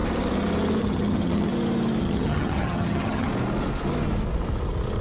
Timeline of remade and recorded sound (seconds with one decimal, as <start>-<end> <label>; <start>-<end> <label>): 0.0-0.8 recorded; 0.8-1.5 remade; 1.5-2.0 recorded; 2.0-3.3 remade; 3.3-5.0 recorded